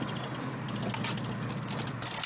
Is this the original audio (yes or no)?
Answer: yes